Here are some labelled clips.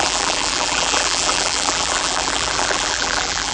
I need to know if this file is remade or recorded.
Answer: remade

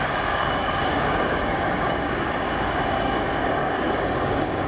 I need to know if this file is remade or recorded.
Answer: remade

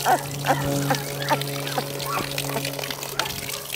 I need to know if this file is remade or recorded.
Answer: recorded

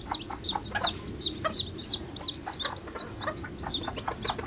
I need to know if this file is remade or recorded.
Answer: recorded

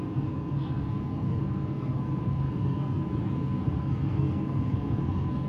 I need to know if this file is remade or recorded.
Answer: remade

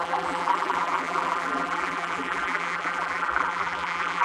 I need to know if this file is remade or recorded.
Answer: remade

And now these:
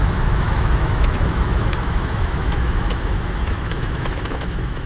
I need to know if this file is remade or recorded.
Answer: remade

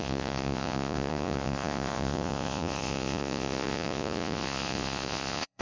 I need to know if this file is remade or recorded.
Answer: remade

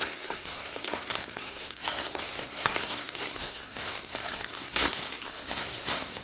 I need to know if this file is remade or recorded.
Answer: remade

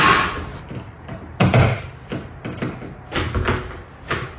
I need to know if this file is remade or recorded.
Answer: recorded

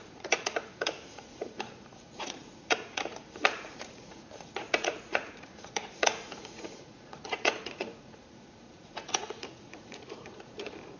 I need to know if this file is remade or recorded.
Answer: remade